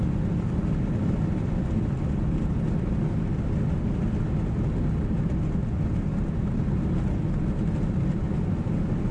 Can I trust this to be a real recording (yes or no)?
yes